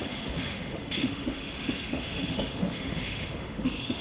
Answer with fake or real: fake